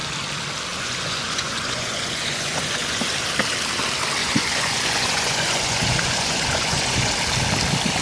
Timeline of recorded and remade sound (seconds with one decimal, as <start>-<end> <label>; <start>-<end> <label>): 0.0-0.7 recorded; 0.7-3.1 remade; 3.1-4.2 recorded; 4.2-7.1 remade; 7.1-8.0 recorded